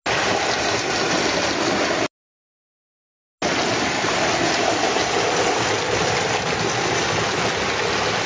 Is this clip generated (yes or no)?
no